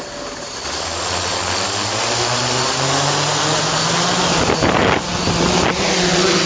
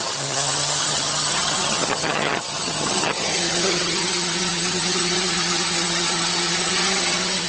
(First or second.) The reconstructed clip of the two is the second